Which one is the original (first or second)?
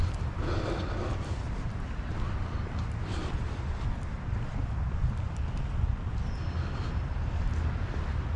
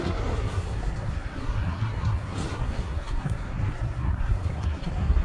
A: first